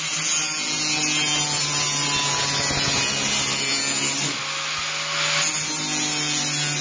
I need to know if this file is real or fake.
real